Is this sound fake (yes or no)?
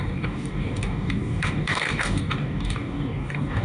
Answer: yes